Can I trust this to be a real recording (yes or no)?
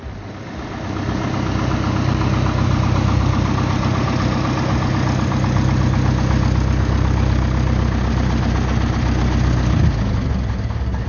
yes